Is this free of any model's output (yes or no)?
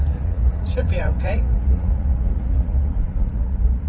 no